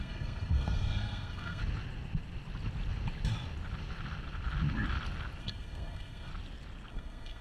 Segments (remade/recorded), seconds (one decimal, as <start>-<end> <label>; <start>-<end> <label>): 0.0-1.6 remade; 1.6-5.4 recorded; 5.4-6.3 remade; 6.3-6.9 recorded; 6.9-7.4 remade